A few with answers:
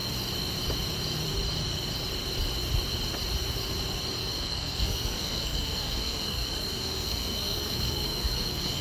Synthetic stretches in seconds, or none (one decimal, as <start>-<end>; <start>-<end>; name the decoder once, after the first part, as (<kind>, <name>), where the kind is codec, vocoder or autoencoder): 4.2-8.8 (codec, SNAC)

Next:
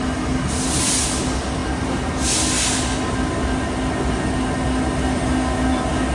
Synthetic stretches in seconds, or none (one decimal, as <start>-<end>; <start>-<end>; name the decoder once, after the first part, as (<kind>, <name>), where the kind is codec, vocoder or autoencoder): none

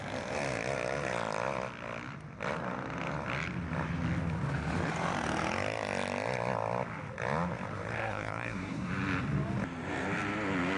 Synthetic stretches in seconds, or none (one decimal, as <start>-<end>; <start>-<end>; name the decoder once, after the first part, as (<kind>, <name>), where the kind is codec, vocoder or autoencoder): 8.0-8.9 (codec, SNAC)

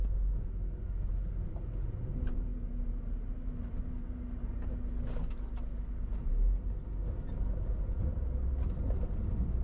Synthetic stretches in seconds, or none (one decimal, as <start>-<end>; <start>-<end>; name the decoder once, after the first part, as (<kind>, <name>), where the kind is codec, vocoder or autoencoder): 0.0-0.5 (codec, SNAC)

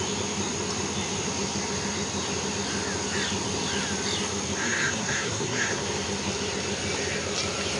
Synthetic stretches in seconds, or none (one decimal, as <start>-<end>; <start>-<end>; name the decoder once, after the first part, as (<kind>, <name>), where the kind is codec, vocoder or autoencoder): 4.6-5.8 (codec, SNAC)

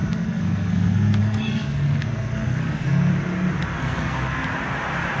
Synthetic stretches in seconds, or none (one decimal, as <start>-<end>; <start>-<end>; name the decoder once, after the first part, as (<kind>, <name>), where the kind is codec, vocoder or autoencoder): 0.0-3.1 (codec, SNAC); 3.8-4.5

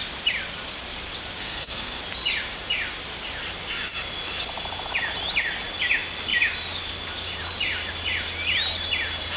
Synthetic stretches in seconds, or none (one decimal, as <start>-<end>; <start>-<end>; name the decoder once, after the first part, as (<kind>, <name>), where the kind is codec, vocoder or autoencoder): 1.4-2.0 (codec, SNAC)

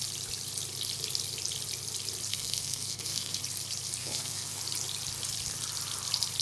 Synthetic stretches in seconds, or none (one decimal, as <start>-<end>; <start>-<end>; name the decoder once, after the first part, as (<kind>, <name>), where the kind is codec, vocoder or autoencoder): 2.3-3.4 (codec, SNAC); 4.0-4.6